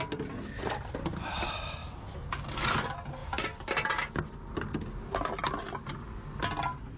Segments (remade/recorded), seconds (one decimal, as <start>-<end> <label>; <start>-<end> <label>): 0.0-7.0 recorded